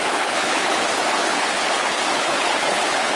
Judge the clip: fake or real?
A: fake